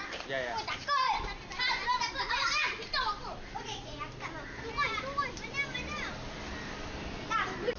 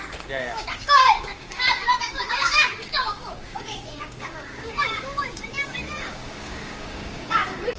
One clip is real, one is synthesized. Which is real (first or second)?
first